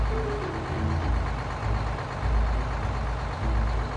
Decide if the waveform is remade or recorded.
recorded